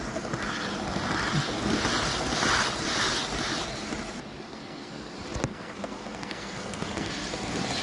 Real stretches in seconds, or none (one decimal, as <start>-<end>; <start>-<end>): 0.0-4.5; 5.1-5.5; 7.1-7.8